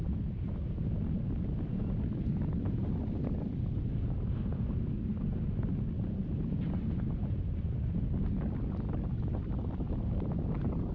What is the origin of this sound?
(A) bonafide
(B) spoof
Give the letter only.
A